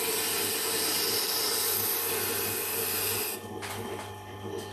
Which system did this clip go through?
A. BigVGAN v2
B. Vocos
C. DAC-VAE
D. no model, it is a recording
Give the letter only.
D